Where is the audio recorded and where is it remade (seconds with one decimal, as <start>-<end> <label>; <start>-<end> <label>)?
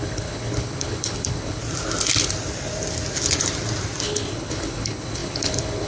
0.0-1.6 remade; 1.6-4.0 recorded; 4.0-5.9 remade